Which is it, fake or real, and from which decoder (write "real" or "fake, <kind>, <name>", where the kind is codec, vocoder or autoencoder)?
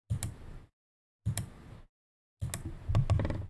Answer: real